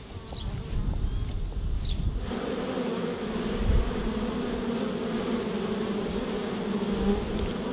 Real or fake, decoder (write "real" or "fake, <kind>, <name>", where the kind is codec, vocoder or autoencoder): real